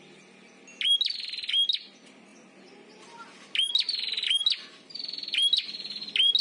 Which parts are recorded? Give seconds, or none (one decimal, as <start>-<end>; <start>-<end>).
0.0-6.4